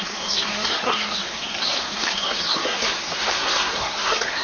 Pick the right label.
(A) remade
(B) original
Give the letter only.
A